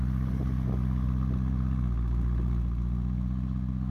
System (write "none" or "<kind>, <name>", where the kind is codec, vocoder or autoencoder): none